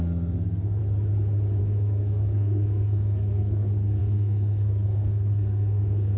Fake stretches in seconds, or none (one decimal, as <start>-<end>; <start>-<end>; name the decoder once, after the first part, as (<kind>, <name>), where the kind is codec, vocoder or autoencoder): 0.0-0.8 (codec, SNAC); 1.6-6.2